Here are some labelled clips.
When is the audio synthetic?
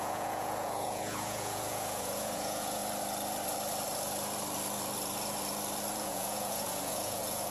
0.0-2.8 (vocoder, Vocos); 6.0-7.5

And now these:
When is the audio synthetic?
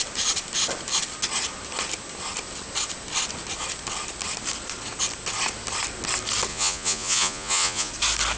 6.5-7.9 (vocoder, Vocos)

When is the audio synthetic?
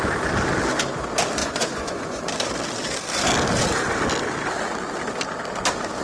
1.4-2.2 (vocoder, Vocos)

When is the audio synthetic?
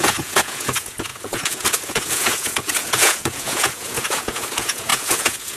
0.0-5.6 (vocoder, Vocos)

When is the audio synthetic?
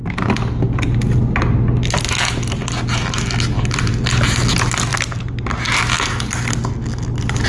none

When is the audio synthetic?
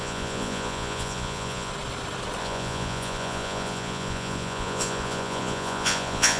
0.0-1.7 (vocoder, Vocos); 2.4-6.4